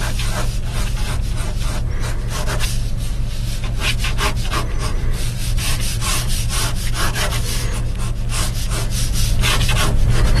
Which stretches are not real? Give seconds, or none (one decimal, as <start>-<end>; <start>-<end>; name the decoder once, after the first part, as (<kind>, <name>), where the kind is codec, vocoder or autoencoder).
4.9-6.7 (vocoder, BigVGAN v2)